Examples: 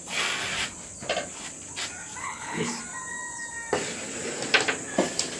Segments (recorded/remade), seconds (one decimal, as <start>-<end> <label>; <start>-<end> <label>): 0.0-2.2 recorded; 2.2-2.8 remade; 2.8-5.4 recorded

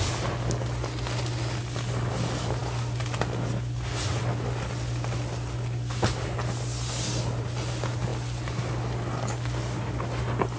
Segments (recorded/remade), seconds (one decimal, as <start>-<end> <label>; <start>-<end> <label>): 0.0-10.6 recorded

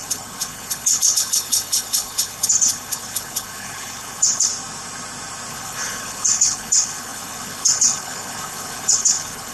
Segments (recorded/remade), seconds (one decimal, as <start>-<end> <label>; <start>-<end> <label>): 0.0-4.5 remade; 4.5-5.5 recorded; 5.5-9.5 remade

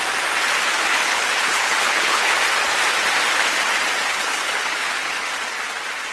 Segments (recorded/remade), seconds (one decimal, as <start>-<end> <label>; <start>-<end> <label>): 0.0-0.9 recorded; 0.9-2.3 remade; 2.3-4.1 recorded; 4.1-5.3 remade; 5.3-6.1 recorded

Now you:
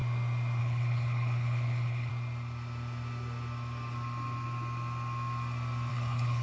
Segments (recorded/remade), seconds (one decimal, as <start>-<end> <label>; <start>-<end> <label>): 0.0-0.6 recorded; 0.6-2.1 remade; 2.1-5.9 recorded; 5.9-6.4 remade

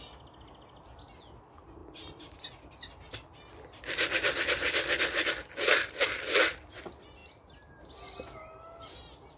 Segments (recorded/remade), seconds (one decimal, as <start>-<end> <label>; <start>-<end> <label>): 0.0-9.4 recorded